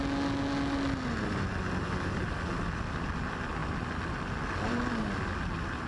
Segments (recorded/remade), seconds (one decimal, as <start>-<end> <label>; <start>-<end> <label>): 0.0-5.9 recorded

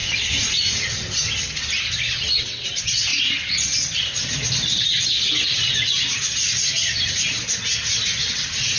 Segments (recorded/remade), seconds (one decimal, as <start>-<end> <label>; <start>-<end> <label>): 0.0-2.4 recorded; 2.4-3.1 remade; 3.1-8.2 recorded; 8.2-8.8 remade

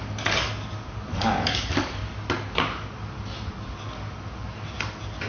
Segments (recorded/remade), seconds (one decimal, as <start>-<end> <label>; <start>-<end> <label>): 0.0-0.5 remade; 0.5-1.1 recorded; 1.1-2.0 remade; 2.0-5.3 recorded

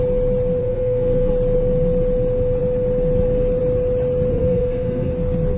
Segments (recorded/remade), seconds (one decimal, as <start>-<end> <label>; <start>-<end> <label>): 0.0-0.6 recorded; 0.6-1.3 remade; 1.3-4.3 recorded; 4.3-5.1 remade; 5.1-5.6 recorded

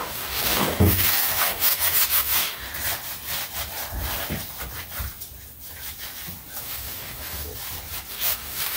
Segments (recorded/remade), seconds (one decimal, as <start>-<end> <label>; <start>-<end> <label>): 0.0-2.6 remade; 2.6-6.6 recorded; 6.6-7.5 remade; 7.5-8.1 recorded; 8.1-8.8 remade

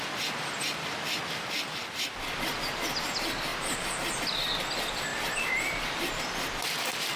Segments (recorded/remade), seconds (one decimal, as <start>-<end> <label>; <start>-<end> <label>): 0.0-3.5 recorded; 3.5-4.1 remade; 4.1-5.1 recorded; 5.1-6.1 remade; 6.1-7.2 recorded

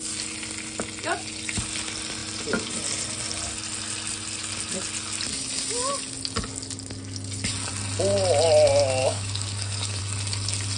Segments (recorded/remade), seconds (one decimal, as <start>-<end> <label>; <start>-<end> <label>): 0.0-9.0 recorded; 9.0-10.0 remade; 10.0-10.8 recorded